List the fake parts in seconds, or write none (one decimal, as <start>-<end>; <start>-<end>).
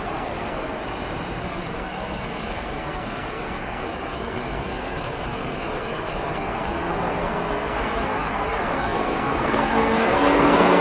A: 0.0-0.8; 1.4-10.8